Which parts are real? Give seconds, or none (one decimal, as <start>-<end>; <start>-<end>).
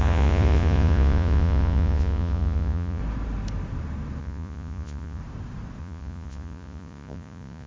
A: 3.0-4.2; 5.2-5.8